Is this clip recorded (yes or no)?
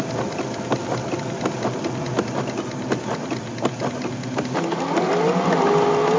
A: yes